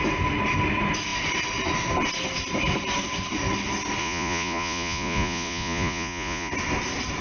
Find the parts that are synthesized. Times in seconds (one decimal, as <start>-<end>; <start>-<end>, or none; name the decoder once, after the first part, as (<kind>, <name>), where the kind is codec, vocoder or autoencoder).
4.0-6.5 (vocoder, Vocos)